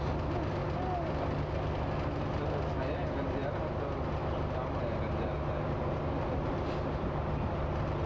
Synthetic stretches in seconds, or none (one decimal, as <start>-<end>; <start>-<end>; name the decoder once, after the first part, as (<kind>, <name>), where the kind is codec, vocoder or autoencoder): none